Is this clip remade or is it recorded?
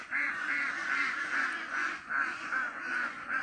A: remade